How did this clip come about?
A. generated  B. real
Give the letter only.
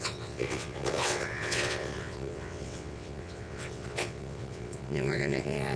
A